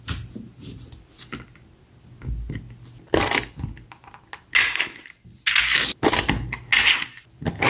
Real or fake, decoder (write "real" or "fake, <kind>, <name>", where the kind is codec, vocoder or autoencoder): real